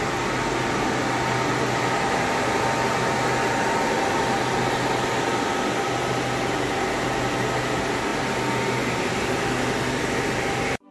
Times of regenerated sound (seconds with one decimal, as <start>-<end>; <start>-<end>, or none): none